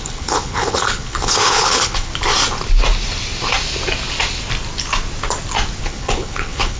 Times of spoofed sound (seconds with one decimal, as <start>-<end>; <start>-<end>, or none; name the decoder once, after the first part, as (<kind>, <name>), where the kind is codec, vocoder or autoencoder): 0.0-2.1 (codec, HILCodec); 5.8-6.8